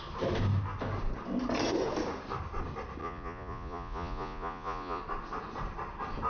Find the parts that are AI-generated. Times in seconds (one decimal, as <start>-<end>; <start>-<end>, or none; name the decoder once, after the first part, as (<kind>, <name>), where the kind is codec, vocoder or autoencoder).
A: 3.0-5.0 (vocoder, Vocos)